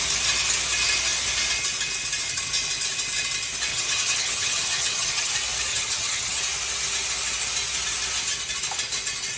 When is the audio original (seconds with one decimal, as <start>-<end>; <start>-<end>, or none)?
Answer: 0.0-3.7; 5.3-5.7; 6.4-9.4